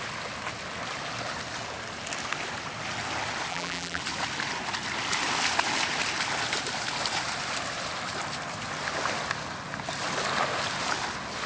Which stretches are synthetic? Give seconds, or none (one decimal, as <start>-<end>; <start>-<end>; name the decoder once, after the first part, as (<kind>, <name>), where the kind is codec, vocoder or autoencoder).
3.5-4.0 (vocoder, BigVGAN v2)